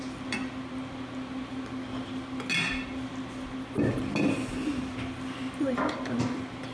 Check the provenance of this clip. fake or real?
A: real